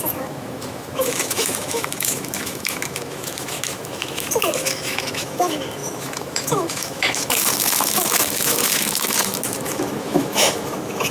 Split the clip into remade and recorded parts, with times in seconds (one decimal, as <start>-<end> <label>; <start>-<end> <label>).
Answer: 0.0-11.1 remade